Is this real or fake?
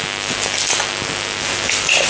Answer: real